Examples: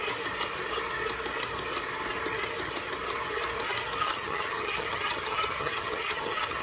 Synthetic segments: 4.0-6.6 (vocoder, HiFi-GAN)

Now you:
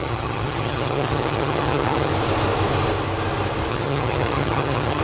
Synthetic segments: 0.0-2.1 (vocoder, HiFi-GAN); 3.7-5.0

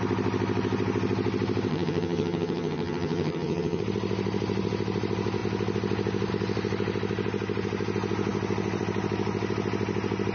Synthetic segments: 1.7-3.8 (vocoder, HiFi-GAN)

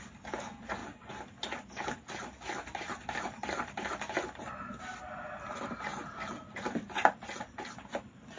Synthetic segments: none

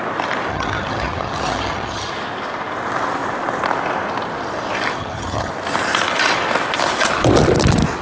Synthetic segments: 0.5-2.1 (vocoder, HiFi-GAN); 5.0-5.5